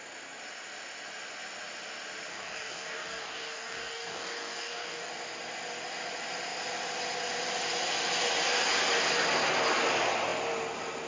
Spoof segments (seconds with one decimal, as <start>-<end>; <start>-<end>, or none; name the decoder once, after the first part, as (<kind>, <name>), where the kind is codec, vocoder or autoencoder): 2.3-5.1 (codec, DAC)